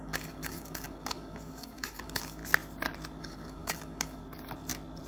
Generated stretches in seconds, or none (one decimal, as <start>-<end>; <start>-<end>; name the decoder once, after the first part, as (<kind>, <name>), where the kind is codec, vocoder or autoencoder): 0.0-2.4 (codec, DAC); 3.2-4.2

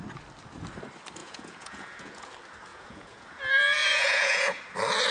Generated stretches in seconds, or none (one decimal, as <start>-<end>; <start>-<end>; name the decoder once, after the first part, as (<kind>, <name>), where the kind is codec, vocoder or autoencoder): 1.2-2.3 (vocoder, Vocos); 2.7-3.4; 3.8-4.6

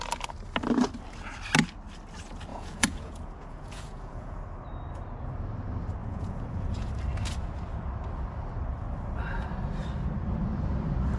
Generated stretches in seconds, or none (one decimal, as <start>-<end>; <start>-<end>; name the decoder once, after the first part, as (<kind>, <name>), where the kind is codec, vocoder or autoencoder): 2.5-4.4 (vocoder, Vocos); 6.0-6.9

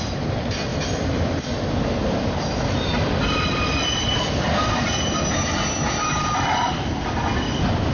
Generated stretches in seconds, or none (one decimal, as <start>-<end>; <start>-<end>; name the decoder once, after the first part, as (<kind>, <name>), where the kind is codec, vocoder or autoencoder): 0.7-5.2 (vocoder, BigVGAN v2)

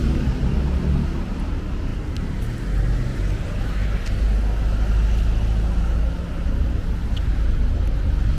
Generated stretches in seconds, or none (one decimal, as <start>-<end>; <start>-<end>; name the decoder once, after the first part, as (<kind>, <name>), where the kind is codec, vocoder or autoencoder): none